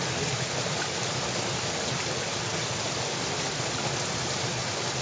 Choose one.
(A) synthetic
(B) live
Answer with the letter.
B